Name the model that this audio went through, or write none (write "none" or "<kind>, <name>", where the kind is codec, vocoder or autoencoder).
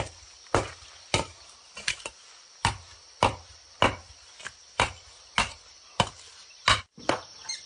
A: none